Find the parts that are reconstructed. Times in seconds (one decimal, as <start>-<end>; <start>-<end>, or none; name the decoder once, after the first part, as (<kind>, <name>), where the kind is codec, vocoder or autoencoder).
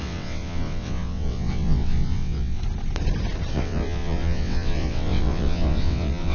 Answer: 0.0-2.6 (vocoder, WaveNeXt); 3.5-6.3